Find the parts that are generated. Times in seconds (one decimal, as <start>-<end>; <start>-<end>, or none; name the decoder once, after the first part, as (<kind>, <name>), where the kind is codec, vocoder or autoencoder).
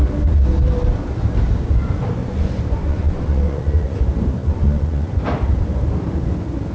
2.2-4.0 (vocoder, Vocos); 4.4-5.2